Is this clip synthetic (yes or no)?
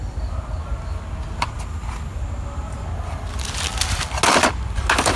no